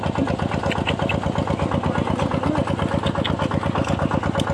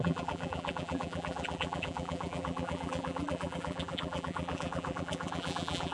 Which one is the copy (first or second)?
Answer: second